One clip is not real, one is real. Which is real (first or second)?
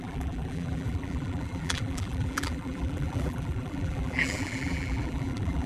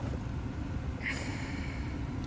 second